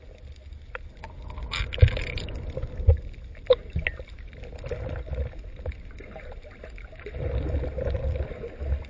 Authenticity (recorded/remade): recorded